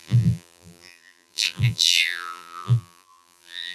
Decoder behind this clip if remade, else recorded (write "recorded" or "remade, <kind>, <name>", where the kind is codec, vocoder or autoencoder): remade, vocoder, BigVGAN v2